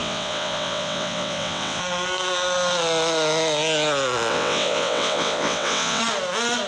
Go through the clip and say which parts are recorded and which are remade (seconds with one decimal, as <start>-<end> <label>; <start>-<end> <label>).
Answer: 0.0-1.8 remade; 1.8-4.3 recorded; 4.3-6.0 remade; 6.0-6.7 recorded